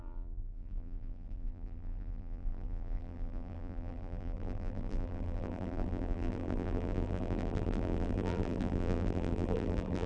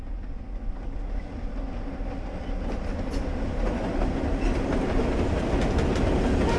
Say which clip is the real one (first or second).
second